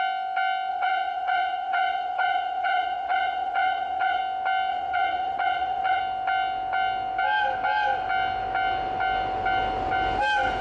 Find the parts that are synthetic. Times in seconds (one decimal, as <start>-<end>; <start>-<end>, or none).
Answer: 0.7-4.2; 4.7-6.0